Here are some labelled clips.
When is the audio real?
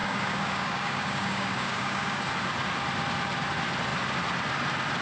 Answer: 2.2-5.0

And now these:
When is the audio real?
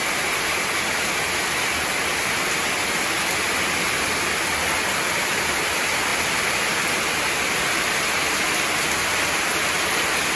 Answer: 0.0-10.4